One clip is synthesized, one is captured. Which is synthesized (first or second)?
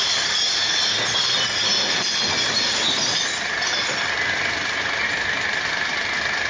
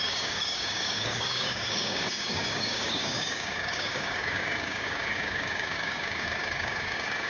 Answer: second